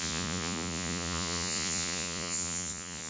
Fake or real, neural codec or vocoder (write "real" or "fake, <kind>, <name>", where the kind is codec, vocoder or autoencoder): fake, vocoder, Vocos